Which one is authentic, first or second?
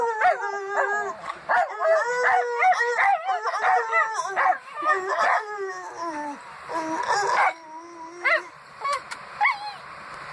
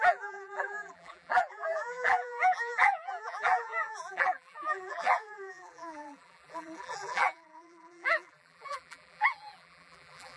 first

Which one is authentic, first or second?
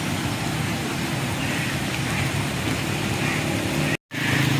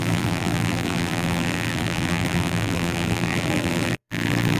first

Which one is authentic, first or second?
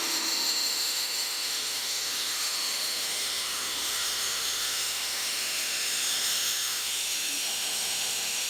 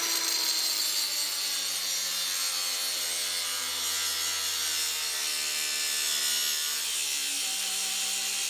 second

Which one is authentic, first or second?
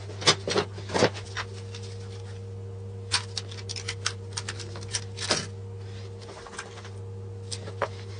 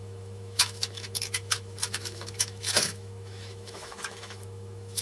first